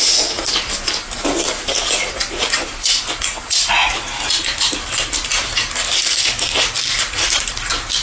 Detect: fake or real fake